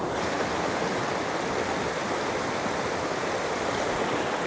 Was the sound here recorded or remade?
recorded